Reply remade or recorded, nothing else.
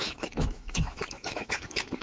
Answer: remade